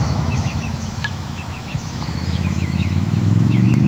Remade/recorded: remade